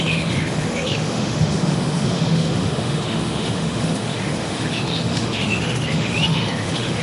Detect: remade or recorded remade